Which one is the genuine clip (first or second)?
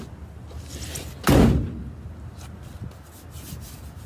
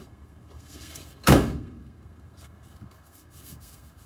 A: first